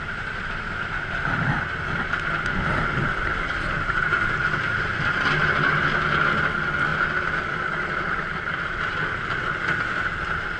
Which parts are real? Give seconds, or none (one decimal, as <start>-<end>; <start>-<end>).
0.0-2.9; 4.9-6.9; 10.1-10.6